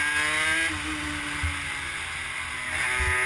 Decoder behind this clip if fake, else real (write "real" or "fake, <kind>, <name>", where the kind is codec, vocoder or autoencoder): real